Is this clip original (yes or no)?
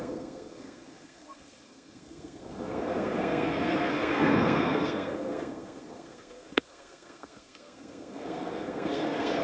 no